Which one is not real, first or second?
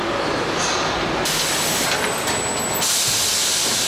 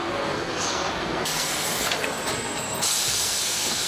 second